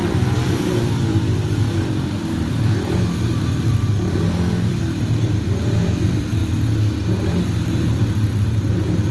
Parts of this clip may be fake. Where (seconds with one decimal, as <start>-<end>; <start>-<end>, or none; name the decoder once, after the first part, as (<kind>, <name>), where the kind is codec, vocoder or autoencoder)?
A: 0.0-6.4 (vocoder, BigVGAN v2); 7.4-9.1